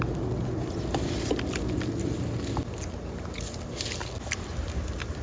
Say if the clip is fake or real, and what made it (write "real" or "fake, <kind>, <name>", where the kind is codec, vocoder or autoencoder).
real